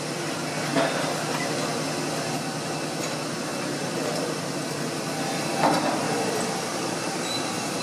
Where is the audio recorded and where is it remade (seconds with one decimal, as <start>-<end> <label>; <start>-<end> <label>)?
0.0-3.5 recorded; 3.5-5.0 remade; 5.0-6.7 recorded; 6.7-7.8 remade